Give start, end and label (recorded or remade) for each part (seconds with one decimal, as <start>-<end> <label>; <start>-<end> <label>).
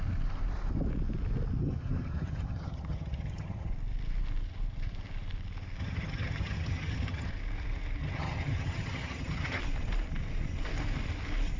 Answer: 0.0-1.6 recorded; 1.6-3.7 remade; 3.7-5.8 recorded; 5.8-7.3 remade; 7.3-8.0 recorded; 8.0-9.6 remade; 9.6-11.6 recorded